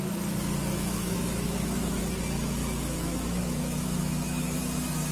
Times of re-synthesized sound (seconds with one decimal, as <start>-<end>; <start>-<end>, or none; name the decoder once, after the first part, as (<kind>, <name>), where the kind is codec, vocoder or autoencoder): 0.7-2.0 (autoencoder, DAC-VAE); 2.6-4.6